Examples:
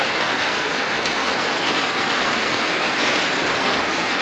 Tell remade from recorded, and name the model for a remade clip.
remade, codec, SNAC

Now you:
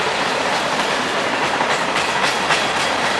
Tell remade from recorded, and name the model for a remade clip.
recorded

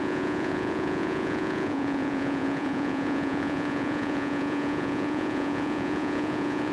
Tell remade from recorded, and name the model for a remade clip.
remade, vocoder, Vocos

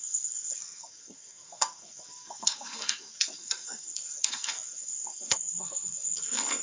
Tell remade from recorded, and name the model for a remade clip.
remade, codec, SNAC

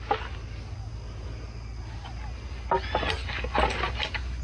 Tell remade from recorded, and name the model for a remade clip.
recorded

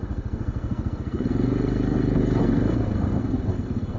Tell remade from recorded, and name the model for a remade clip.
remade, codec, SNAC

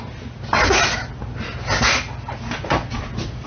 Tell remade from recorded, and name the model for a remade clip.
recorded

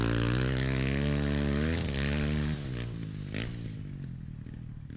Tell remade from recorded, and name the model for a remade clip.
recorded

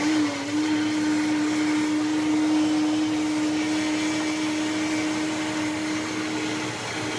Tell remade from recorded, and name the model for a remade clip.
recorded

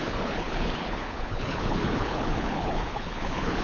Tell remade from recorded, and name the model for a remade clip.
remade, codec, HILCodec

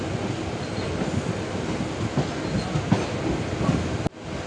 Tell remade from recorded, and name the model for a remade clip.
recorded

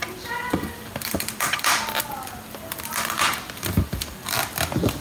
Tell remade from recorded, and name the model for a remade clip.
remade, vocoder, BigVGAN v2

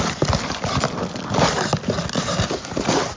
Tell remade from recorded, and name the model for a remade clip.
recorded